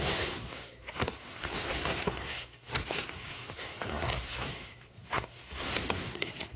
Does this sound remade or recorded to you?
remade